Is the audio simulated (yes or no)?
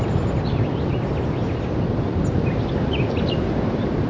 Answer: no